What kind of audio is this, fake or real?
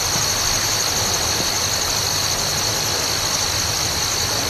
real